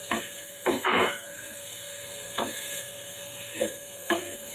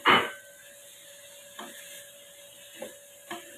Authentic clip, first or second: second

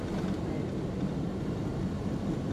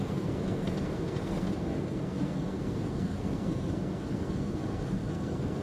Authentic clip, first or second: first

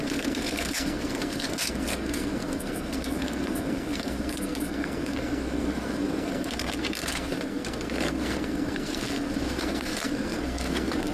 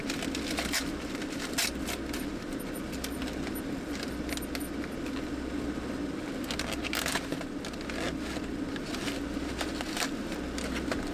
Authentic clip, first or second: second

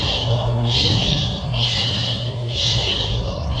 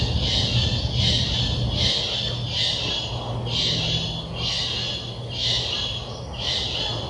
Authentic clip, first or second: second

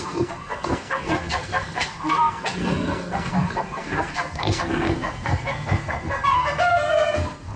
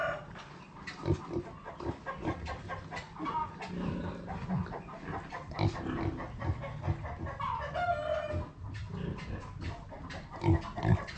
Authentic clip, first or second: second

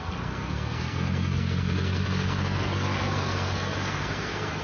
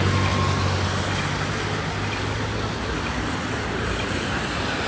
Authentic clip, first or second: second